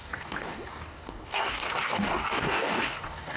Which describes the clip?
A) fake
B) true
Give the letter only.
A